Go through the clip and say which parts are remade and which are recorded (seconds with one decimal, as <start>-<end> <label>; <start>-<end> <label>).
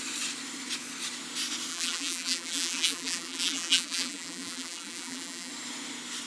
0.0-1.7 recorded; 1.7-5.5 remade; 5.5-6.3 recorded